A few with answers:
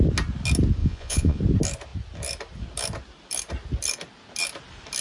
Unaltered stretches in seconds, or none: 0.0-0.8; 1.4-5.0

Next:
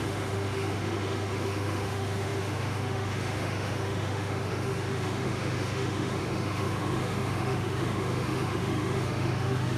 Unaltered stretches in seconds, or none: none

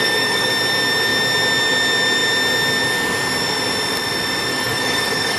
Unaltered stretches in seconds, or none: 0.5-4.5

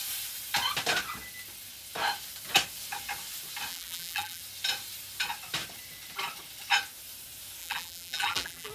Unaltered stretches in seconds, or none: 0.0-3.7; 4.4-7.6